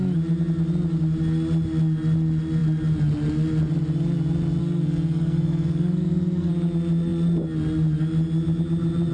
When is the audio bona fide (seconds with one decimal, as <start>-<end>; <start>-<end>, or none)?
0.0-4.6; 6.5-9.1